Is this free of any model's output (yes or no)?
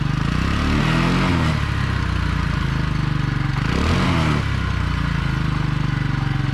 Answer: yes